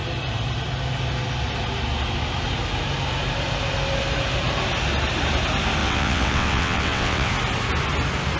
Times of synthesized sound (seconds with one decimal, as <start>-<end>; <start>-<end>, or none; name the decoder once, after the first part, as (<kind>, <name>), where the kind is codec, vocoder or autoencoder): 5.8-7.3 (vocoder, WaveNeXt)

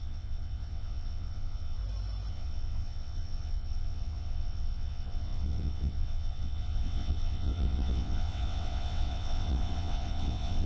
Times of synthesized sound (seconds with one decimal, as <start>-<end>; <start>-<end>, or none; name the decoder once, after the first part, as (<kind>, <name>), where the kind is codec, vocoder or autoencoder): 0.0-1.8 (vocoder, WaveNeXt); 2.3-10.7

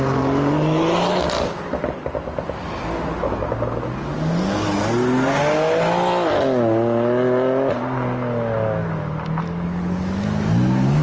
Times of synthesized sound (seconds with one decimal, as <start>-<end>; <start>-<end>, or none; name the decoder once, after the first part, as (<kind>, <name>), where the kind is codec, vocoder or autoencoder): none

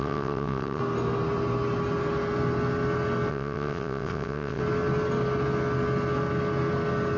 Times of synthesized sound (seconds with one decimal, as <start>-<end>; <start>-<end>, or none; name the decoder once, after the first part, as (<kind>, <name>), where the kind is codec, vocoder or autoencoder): 0.0-0.8 (vocoder, WaveNeXt); 3.3-4.6

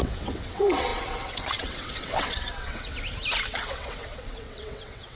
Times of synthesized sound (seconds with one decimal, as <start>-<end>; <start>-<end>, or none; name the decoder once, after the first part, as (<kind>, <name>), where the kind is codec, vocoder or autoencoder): 0.0-2.9 (vocoder, WaveNeXt); 3.5-5.2

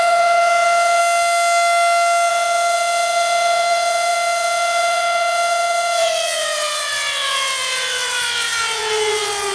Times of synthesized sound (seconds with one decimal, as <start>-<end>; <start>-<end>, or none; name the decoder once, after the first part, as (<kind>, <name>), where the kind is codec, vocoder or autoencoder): 0.0-1.0 (vocoder, WaveNeXt); 2.3-9.5

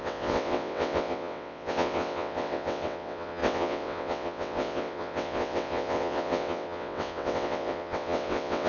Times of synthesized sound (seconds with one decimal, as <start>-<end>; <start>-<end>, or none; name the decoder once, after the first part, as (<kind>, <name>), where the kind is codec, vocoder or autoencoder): 0.0-8.7 (vocoder, WaveNeXt)

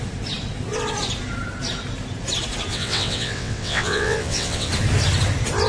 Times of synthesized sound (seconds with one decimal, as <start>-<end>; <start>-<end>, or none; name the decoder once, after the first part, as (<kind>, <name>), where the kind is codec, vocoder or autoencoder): 2.7-4.7 (vocoder, WaveNeXt)